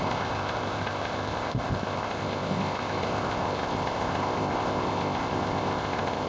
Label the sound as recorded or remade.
remade